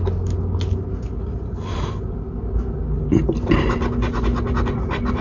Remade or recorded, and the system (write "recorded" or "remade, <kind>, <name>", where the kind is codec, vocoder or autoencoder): recorded